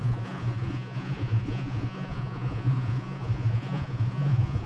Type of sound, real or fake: fake